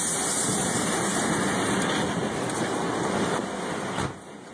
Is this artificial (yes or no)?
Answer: no